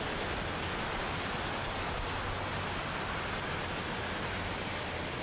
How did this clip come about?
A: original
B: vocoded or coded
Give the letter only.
A